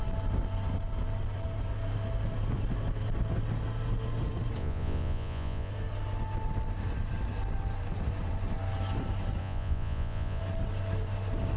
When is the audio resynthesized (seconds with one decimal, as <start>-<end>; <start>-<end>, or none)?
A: 4.6-5.7; 9.4-10.4